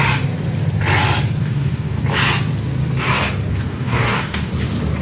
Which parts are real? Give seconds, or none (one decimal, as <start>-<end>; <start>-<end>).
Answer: 0.0-1.4; 2.0-3.5; 4.5-5.0